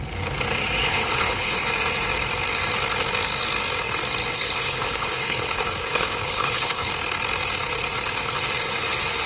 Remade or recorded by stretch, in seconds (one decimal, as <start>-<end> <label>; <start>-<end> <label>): 0.0-0.9 recorded; 0.9-1.6 remade; 1.6-4.2 recorded; 4.2-6.9 remade; 6.9-9.3 recorded